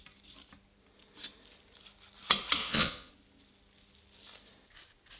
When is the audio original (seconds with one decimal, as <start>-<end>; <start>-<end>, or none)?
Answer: 0.0-2.6; 3.1-5.2